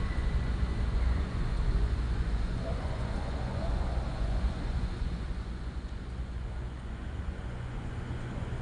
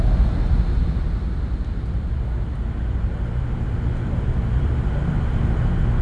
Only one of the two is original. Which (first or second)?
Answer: second